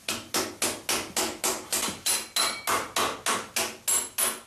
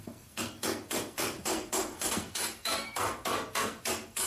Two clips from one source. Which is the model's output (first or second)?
second